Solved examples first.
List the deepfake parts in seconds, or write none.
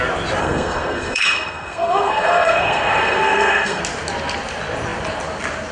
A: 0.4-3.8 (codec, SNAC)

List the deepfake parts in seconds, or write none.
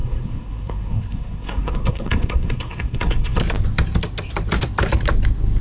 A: 0.0-3.4 (codec, SNAC)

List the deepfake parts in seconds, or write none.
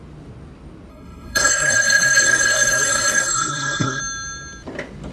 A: 0.9-4.0 (codec, SNAC)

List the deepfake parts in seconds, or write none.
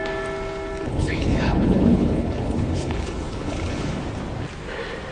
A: 0.9-4.0 (codec, HILCodec)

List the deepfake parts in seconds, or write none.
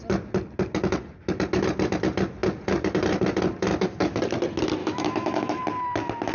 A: 4.8-5.6 (autoencoder, DAC-VAE)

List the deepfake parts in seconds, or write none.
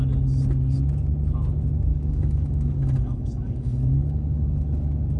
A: 1.9-5.2 (codec, DAC)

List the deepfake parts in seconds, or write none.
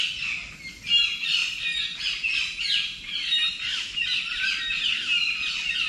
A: none